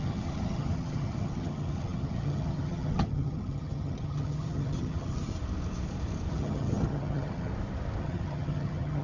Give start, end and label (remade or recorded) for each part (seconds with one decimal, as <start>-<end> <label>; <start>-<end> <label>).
0.0-5.3 remade; 5.3-6.3 recorded; 6.3-7.5 remade; 7.5-8.0 recorded; 8.0-9.0 remade